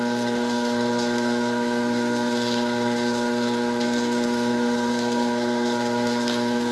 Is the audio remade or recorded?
remade